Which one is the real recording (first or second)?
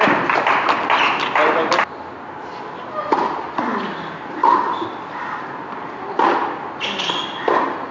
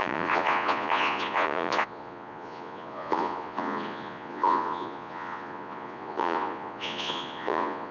first